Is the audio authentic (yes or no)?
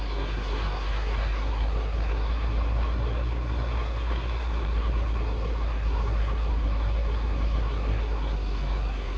no